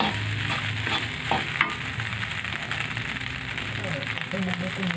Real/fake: real